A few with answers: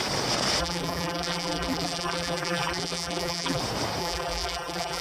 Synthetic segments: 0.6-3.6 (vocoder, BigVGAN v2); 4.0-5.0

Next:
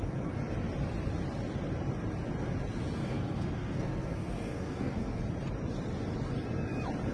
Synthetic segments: 3.0-5.2 (codec, SNAC)

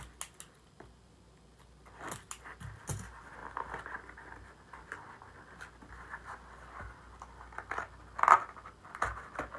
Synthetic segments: none

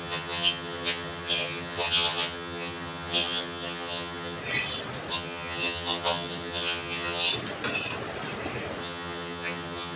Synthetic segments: 0.0-4.4 (vocoder, HiFi-GAN); 5.1-7.3; 8.8-10.0

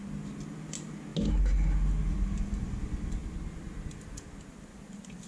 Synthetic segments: none

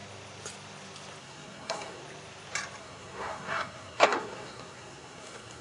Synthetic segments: 1.2-2.0 (codec, SNAC); 2.8-5.6

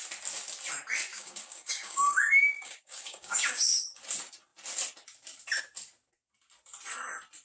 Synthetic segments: 1.1-4.0 (codec, DAC)

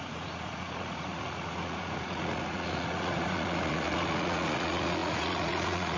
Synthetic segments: 0.0-6.0 (vocoder, Vocos)